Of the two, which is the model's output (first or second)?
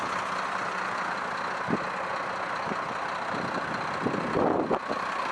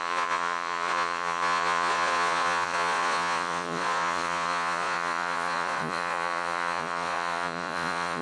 second